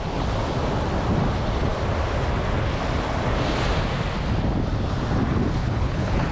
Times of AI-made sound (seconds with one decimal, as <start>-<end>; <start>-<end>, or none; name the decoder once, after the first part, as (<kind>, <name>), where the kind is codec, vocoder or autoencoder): 5.6-6.3 (codec, HILCodec)